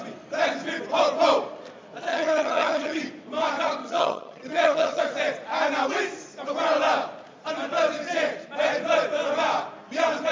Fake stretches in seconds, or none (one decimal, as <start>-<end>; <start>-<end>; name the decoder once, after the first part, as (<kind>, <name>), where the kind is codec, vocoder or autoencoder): 2.1-3.0 (vocoder, HiFi-GAN); 3.8-5.0